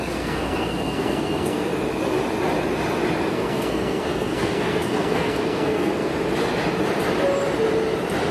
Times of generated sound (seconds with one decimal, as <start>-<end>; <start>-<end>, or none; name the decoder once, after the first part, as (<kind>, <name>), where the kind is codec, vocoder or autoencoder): 0.0-1.7 (codec, SNAC); 3.3-6.1